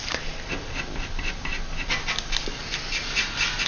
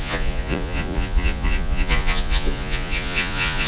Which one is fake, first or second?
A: second